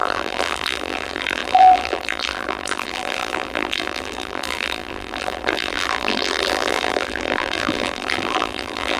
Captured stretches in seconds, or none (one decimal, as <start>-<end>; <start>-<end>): none